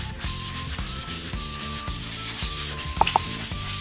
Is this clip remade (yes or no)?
yes